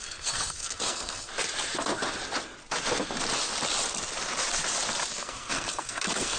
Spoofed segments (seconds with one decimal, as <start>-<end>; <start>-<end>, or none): 0.0-1.3; 5.1-6.4